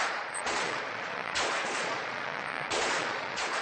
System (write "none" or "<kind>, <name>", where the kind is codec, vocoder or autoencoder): vocoder, Vocos